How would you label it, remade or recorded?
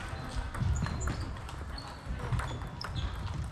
recorded